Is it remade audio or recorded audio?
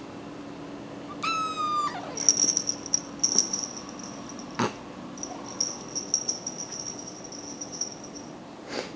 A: recorded